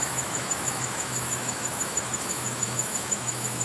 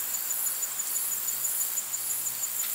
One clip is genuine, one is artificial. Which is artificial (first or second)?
first